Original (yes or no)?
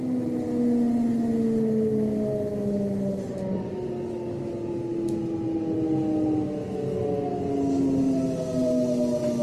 yes